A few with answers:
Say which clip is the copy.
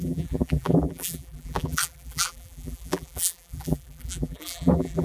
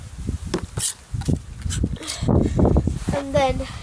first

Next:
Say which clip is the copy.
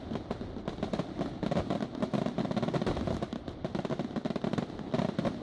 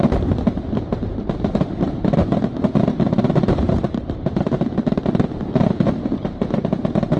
second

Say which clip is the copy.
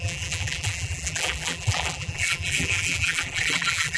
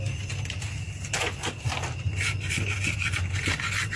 first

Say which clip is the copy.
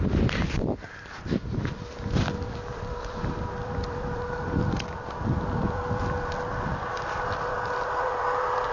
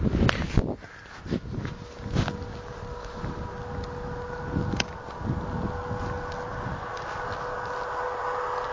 first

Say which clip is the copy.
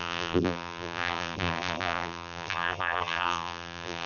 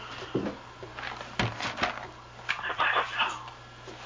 first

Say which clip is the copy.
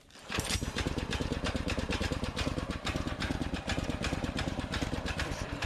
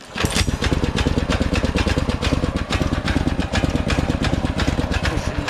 first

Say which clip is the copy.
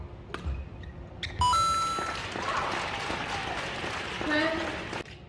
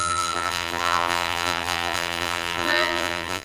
second